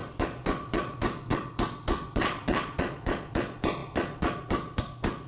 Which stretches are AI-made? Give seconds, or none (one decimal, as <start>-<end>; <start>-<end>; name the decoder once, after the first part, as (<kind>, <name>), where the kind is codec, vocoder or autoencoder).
0.0-5.3 (vocoder, Vocos)